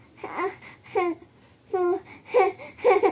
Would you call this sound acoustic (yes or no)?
yes